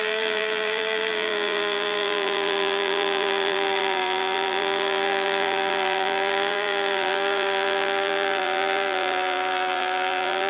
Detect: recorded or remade remade